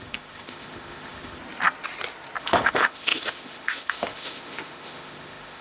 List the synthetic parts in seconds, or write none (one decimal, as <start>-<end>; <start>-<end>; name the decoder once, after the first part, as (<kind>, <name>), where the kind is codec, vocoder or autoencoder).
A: 0.0-1.4 (autoencoder, DAC-VAE); 2.4-5.6